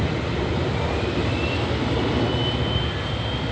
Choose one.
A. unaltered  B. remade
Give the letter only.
A